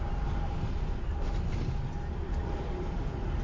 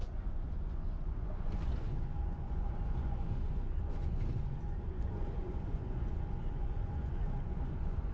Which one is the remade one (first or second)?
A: second